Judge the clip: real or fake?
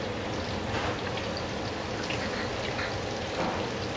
real